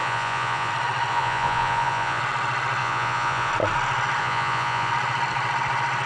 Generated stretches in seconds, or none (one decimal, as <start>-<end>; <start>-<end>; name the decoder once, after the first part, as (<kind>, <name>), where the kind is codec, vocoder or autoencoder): 0.0-0.7 (vocoder, Vocos); 1.1-2.2; 2.8-3.5; 4.2-4.9